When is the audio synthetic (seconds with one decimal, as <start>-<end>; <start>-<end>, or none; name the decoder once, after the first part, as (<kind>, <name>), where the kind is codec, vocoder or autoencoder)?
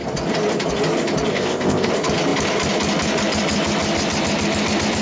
1.3-1.9 (codec, ZipCodec)